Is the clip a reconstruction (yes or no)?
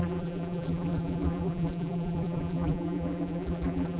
yes